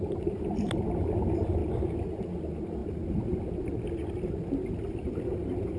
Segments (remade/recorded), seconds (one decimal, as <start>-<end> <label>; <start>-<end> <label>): 0.0-5.8 recorded